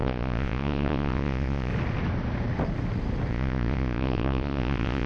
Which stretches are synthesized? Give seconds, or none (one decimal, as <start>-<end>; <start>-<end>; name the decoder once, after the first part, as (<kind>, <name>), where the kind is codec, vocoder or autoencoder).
0.0-1.7 (vocoder, Vocos); 3.3-5.1